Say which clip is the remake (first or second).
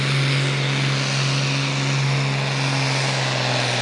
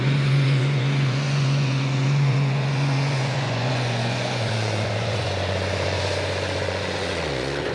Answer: second